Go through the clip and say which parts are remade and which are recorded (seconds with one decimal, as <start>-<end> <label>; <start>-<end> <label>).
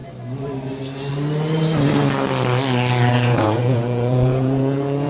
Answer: 0.0-3.1 recorded; 3.1-5.1 remade